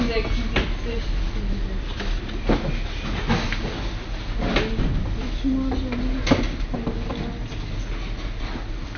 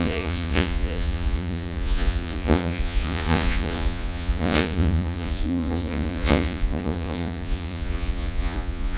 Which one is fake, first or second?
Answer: second